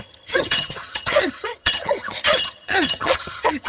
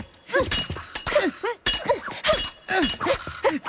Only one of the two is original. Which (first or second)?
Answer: second